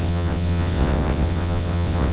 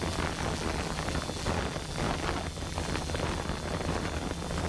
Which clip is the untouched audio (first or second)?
second